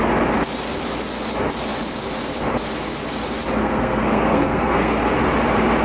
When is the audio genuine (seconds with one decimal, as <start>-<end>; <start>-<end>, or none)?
0.0-3.6; 5.1-5.8